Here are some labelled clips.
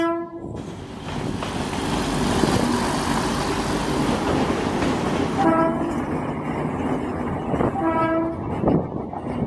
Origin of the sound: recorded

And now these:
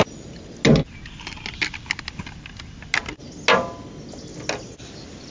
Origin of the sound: recorded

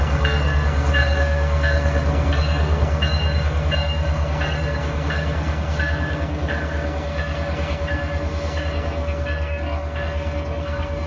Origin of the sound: remade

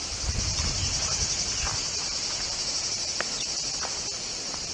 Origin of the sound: recorded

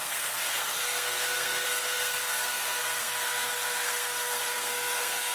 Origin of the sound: remade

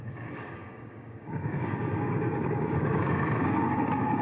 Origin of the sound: remade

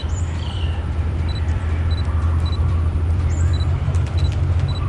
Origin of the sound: remade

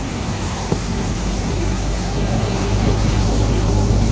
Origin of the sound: remade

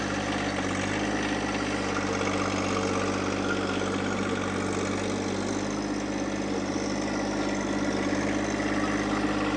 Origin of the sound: recorded